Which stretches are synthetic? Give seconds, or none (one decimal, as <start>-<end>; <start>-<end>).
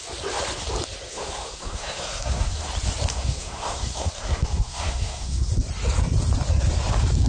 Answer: 1.1-2.7; 3.1-5.5